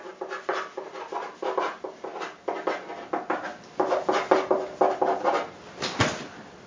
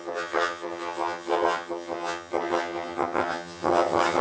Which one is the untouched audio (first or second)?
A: first